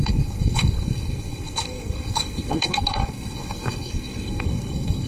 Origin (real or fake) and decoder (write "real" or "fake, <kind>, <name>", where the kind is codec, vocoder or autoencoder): fake, codec, SNAC